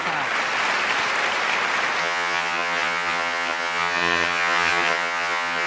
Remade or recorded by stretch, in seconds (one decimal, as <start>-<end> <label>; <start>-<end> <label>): 0.0-2.0 recorded; 2.0-5.7 remade